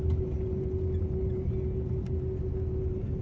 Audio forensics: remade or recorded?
recorded